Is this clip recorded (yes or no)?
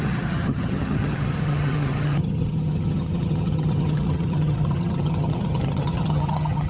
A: no